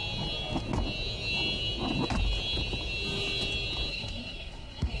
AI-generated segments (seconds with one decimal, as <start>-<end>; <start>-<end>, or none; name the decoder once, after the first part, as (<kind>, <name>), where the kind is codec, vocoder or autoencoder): 3.9-5.0 (codec, SNAC)